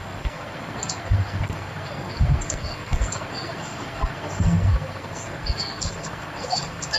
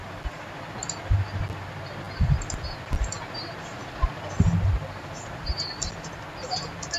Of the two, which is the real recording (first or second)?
second